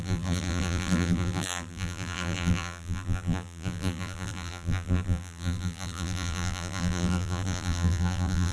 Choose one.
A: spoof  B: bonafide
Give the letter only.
A